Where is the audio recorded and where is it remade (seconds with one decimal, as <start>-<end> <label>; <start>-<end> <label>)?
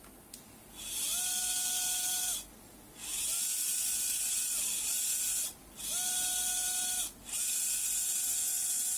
0.0-9.0 recorded